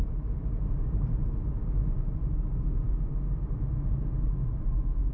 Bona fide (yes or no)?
yes